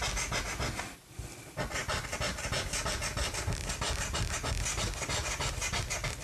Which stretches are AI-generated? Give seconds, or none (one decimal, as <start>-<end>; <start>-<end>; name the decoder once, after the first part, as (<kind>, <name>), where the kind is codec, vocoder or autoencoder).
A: none